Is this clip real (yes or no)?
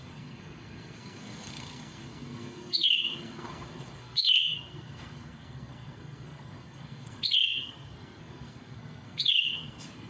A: no